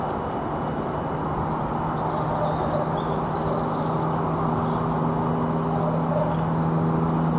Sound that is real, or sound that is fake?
real